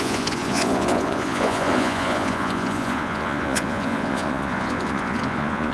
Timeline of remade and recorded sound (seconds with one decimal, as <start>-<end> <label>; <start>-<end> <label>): 0.0-5.7 remade